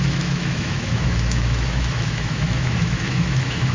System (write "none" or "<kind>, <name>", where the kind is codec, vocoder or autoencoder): autoencoder, DAC-VAE